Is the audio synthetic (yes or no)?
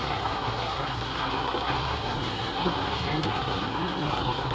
yes